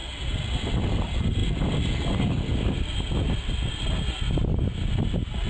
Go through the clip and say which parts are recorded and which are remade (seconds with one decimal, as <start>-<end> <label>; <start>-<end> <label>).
0.0-5.5 recorded